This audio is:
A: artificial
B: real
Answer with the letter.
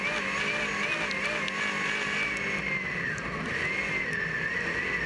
B